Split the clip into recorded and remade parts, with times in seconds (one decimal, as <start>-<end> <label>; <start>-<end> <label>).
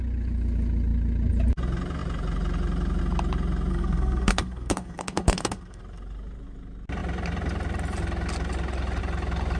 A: 0.0-3.7 recorded; 3.7-5.8 remade; 5.8-9.6 recorded